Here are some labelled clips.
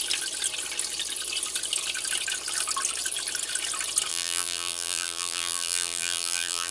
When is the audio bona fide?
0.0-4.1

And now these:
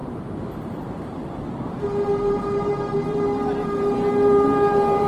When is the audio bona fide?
none

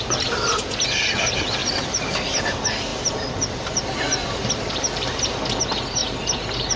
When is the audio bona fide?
0.0-1.6; 2.4-2.9; 5.1-6.0

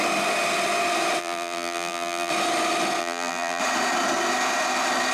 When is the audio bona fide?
0.0-1.2; 2.3-3.0; 3.6-5.1

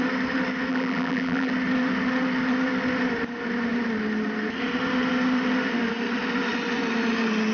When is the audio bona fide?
0.0-0.7; 1.5-7.5

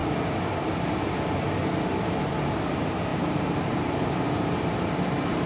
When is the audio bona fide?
0.0-2.4

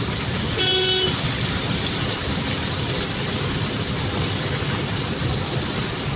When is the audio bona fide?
0.0-6.2

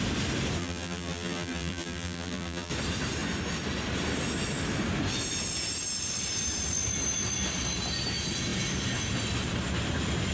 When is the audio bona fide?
0.0-0.6; 2.7-10.3